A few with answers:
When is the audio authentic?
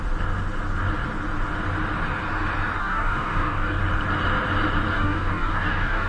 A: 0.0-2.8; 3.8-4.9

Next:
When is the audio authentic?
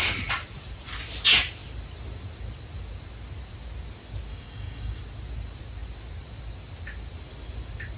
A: 0.0-4.3; 5.0-8.0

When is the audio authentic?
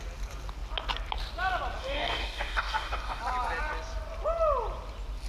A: 0.0-1.8; 3.2-5.3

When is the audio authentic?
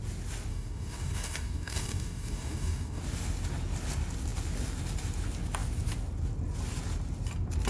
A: 0.0-0.5; 3.0-7.7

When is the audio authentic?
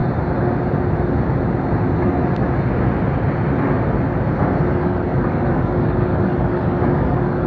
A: 0.0-4.7